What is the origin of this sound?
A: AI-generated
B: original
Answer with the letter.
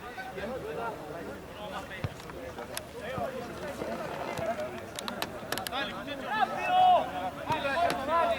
B